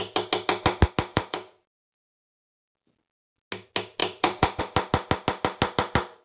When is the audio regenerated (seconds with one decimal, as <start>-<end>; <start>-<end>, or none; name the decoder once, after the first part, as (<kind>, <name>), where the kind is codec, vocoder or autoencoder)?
1.1-2.3 (vocoder, BigVGAN v2); 4.0-4.6